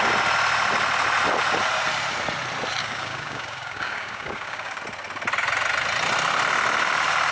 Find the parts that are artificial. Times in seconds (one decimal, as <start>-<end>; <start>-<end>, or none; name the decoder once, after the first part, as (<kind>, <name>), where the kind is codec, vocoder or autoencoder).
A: 2.8-4.8 (codec, DAC)